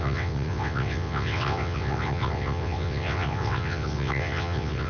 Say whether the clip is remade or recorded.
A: remade